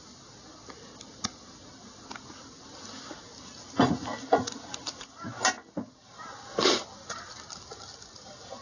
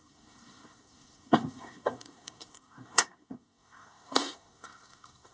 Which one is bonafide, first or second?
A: first